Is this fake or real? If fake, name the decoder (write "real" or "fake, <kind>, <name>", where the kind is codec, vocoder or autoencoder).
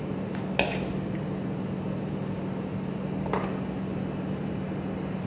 real